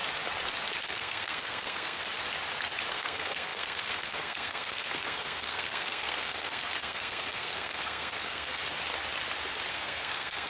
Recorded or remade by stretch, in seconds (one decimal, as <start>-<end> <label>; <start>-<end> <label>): 0.0-0.8 recorded; 0.8-2.0 remade; 2.0-2.9 recorded; 2.9-8.6 remade; 8.6-9.7 recorded; 9.7-10.5 remade